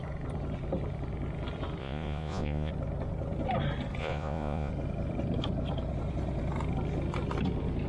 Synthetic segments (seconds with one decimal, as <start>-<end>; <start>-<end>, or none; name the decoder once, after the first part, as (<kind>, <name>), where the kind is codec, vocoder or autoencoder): 1.8-2.7 (vocoder, Vocos); 4.0-4.7